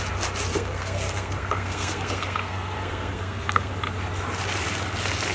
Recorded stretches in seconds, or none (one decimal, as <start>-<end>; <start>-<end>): 0.0-0.5; 3.7-5.3